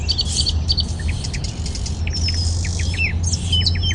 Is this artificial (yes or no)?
no